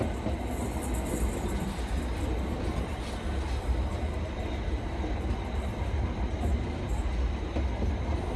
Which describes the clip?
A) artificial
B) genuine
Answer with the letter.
B